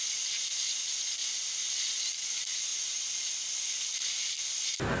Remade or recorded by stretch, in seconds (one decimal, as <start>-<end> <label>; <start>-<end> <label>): 0.0-5.0 recorded